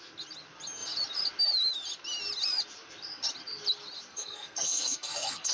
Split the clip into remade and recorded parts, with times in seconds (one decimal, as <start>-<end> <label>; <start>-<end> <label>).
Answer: 0.0-4.1 recorded; 4.1-5.5 remade